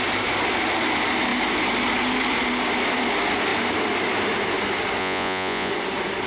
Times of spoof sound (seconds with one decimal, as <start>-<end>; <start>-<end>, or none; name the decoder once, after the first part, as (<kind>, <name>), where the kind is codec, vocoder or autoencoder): 5.0-5.7 (vocoder, Vocos)